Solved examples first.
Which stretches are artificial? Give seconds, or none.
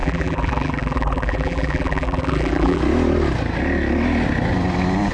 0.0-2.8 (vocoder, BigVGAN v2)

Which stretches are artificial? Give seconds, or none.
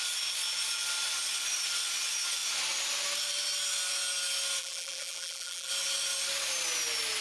4.6-5.7 (vocoder, BigVGAN v2)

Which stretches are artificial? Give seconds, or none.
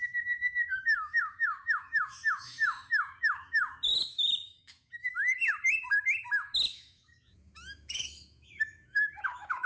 0.0-9.7 (autoencoder, DAC-VAE)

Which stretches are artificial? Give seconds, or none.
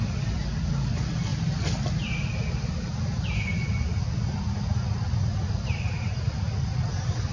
0.0-7.3 (vocoder, BigVGAN v2)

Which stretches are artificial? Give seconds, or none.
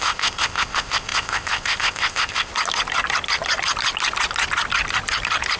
0.0-2.5 (codec, ZipCodec)